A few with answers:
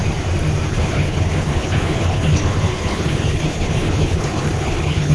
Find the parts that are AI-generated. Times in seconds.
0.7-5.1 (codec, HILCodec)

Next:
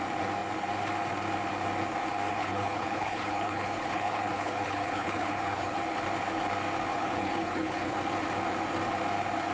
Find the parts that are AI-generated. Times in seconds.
2.3-5.8 (codec, HILCodec); 6.9-8.0

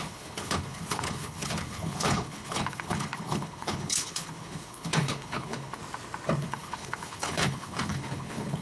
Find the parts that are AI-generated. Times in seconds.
0.0-5.8 (codec, HILCodec); 6.4-8.6